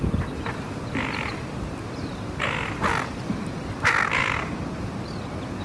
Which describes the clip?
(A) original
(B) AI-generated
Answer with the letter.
A